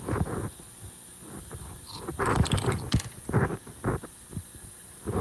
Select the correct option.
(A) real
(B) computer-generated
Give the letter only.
A